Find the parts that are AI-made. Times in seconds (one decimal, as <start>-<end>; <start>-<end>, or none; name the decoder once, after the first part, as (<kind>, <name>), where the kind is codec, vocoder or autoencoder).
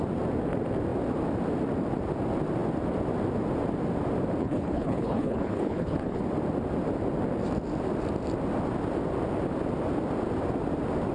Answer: 4.4-6.2 (codec, HILCodec)